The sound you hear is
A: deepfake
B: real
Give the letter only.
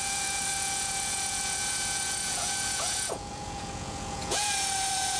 A